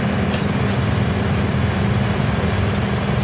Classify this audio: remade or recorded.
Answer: recorded